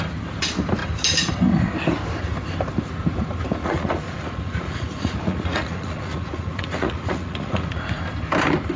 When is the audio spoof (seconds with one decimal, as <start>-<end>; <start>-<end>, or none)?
3.6-8.0